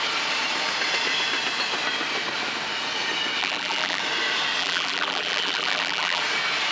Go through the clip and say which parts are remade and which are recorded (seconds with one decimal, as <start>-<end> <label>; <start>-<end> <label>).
0.0-3.4 recorded; 3.4-4.0 remade; 4.0-4.6 recorded; 4.6-6.2 remade; 6.2-6.7 recorded